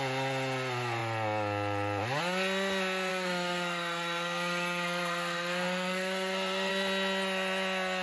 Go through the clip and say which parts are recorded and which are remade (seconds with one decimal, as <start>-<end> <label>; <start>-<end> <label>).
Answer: 0.0-3.1 recorded; 3.1-6.7 remade; 6.7-8.0 recorded